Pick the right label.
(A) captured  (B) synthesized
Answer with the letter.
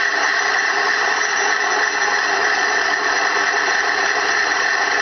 A